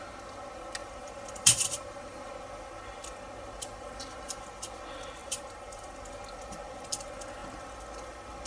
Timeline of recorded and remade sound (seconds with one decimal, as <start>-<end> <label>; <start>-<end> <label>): 0.0-0.8 recorded; 0.8-2.3 remade; 2.3-5.2 recorded; 5.2-6.0 remade; 6.0-8.5 recorded